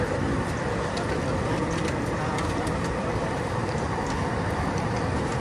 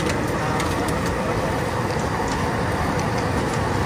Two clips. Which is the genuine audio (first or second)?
second